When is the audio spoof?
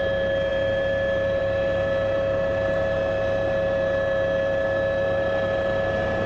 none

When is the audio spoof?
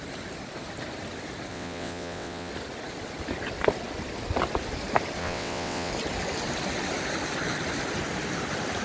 1.5-2.5 (vocoder, WaveNeXt); 5.2-5.9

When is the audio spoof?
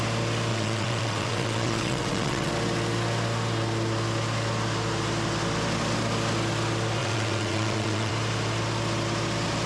0.5-2.5 (vocoder, WaveNeXt); 7.0-8.1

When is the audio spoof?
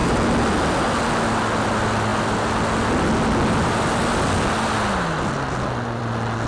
none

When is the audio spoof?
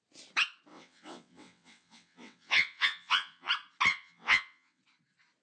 0.7-3.5 (vocoder, WaveNeXt); 3.9-4.8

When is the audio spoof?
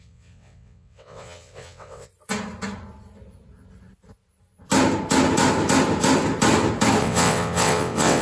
0.0-2.1 (vocoder, WaveNeXt); 7.0-8.2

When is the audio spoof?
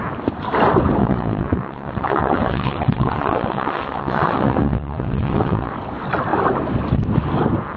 1.0-5.7 (vocoder, WaveNeXt)